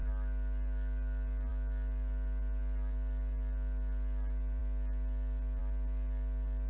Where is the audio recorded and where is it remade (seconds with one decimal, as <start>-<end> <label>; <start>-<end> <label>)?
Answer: 0.0-6.7 recorded